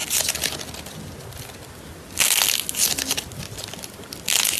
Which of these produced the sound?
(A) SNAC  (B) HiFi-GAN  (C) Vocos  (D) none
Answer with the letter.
D